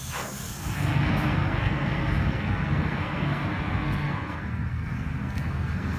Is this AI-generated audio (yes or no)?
yes